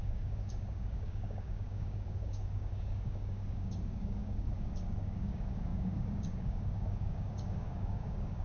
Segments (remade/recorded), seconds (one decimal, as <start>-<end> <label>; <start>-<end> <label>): 0.0-8.4 remade